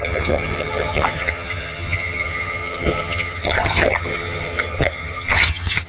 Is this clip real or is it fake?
fake